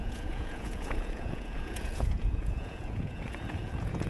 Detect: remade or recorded remade